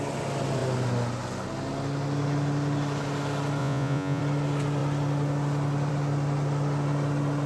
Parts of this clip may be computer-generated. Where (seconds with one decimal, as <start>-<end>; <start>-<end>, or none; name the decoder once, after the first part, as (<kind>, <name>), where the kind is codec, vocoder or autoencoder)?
3.6-4.2 (vocoder, Vocos)